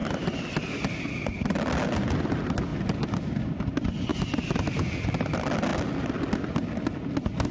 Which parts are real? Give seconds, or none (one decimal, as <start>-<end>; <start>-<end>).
0.0-2.7; 3.4-7.5